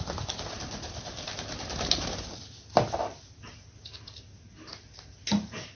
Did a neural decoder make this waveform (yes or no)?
no